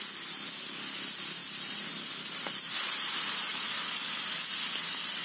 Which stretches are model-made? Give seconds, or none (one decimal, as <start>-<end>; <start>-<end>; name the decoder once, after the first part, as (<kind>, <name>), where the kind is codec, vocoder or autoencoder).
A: none